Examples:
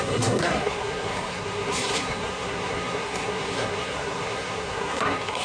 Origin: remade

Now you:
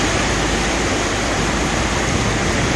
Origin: remade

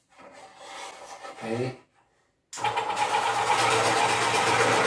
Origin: recorded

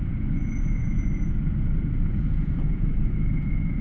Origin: remade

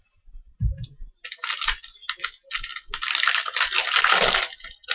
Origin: recorded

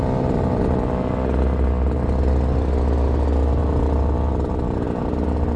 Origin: recorded